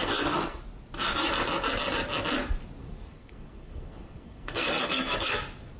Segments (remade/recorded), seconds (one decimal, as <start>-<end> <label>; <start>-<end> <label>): 0.0-0.6 remade; 0.6-2.8 recorded; 2.8-5.3 remade; 5.3-5.8 recorded

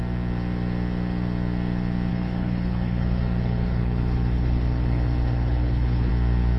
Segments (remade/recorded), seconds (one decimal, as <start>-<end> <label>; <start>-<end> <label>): 0.0-2.1 recorded; 2.1-6.1 remade; 6.1-6.6 recorded

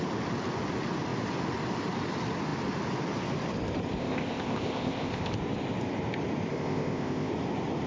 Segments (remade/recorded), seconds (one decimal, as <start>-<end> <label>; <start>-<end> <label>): 0.0-4.0 recorded; 4.0-5.3 remade; 5.3-6.5 recorded; 6.5-7.3 remade; 7.3-7.9 recorded

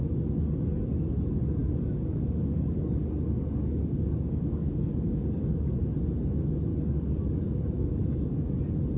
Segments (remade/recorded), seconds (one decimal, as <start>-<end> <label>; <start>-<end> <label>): 0.0-1.6 recorded; 1.6-5.9 remade; 5.9-6.7 recorded; 6.7-8.6 remade; 8.6-9.0 recorded

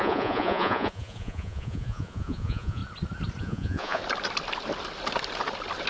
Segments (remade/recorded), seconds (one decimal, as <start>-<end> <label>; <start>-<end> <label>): 0.0-2.8 remade; 2.8-3.4 recorded; 3.4-4.0 remade; 4.0-5.9 recorded